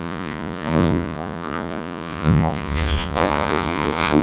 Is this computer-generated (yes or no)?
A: yes